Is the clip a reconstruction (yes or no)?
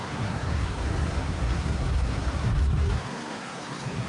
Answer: yes